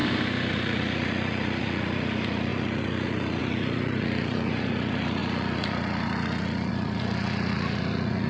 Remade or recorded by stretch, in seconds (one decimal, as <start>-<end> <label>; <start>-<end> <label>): 0.0-0.5 recorded; 0.5-8.3 remade